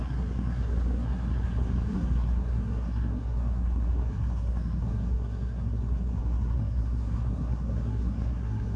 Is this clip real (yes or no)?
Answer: no